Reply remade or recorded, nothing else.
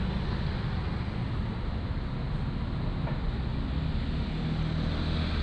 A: recorded